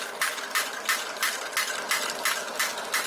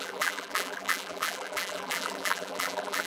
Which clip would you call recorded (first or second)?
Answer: first